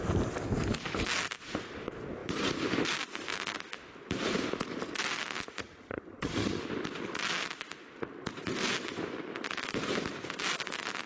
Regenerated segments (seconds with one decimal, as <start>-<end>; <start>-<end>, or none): 5.6-6.6